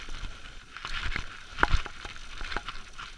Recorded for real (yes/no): yes